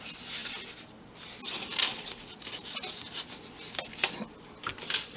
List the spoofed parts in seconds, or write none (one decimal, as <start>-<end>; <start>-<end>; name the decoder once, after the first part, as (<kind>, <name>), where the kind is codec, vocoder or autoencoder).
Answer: none